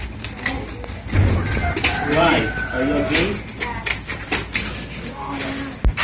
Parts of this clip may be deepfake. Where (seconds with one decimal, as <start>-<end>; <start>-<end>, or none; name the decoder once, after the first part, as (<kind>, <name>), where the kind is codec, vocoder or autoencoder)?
none